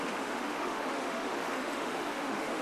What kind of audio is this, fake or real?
fake